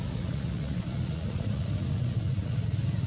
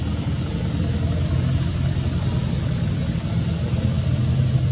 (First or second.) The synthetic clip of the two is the first